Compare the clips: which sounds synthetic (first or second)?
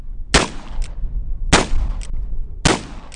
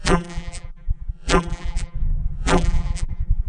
second